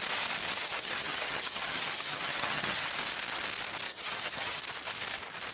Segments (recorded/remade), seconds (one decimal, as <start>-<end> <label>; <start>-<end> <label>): 0.0-0.5 recorded; 0.5-2.9 remade; 2.9-3.9 recorded; 3.9-4.6 remade; 4.6-5.5 recorded

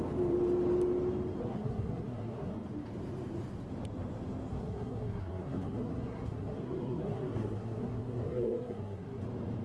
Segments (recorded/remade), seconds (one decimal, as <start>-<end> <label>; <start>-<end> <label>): 0.0-1.4 recorded; 1.4-2.5 remade; 2.5-4.5 recorded; 4.5-9.2 remade; 9.2-9.6 recorded

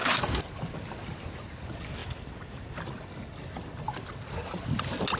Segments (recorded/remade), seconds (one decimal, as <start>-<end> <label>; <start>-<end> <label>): 0.0-5.2 recorded

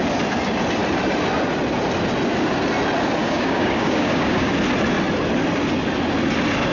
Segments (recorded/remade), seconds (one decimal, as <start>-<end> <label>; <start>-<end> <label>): 0.0-3.2 recorded; 3.2-4.5 remade; 4.5-6.7 recorded

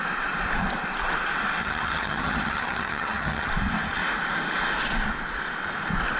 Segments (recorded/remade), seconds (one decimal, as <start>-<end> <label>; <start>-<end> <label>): 0.0-1.6 recorded; 1.6-3.5 remade; 3.5-6.2 recorded

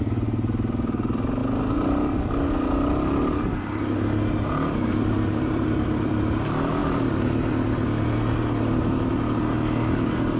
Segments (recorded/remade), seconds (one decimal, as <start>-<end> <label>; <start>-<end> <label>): 0.0-10.4 recorded